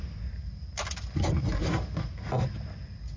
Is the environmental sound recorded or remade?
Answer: recorded